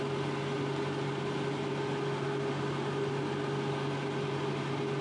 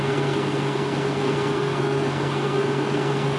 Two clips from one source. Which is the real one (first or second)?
first